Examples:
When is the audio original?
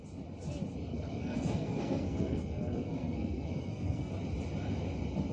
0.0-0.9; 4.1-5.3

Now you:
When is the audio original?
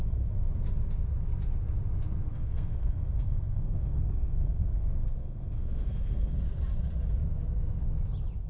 0.5-2.3; 6.4-8.5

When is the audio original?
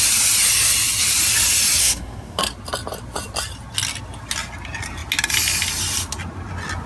0.0-1.8; 2.4-6.9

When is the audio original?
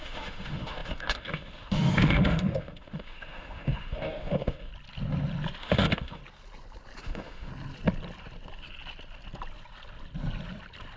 4.7-5.6; 6.2-7.0; 7.5-11.0